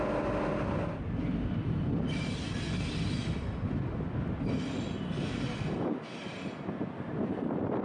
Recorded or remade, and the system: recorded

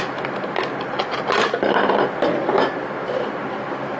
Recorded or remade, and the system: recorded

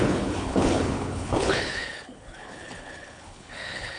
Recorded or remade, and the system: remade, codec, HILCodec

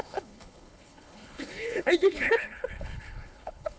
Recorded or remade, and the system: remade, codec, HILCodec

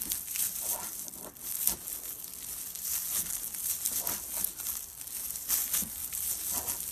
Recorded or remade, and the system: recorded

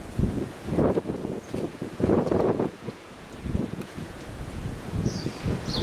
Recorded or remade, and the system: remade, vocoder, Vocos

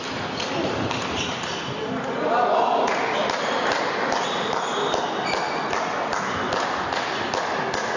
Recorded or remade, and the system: recorded